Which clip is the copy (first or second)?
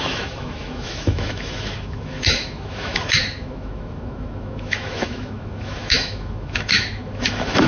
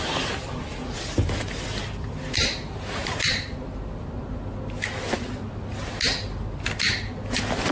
first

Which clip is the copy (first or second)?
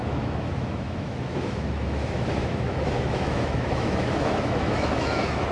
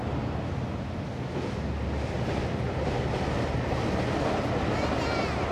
first